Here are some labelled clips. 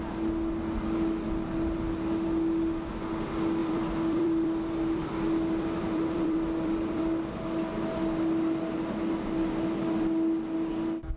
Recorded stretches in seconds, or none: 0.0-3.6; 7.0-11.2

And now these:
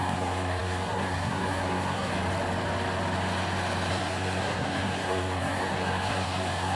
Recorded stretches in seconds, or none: 2.1-3.9

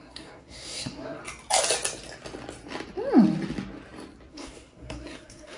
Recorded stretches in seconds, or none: 1.2-4.3

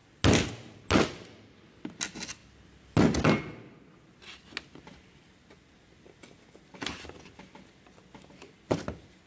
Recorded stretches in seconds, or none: 0.0-9.3

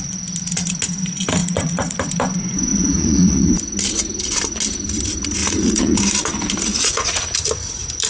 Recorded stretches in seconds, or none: 0.0-1.4; 2.1-2.7; 3.5-5.4; 6.0-6.7; 7.2-8.1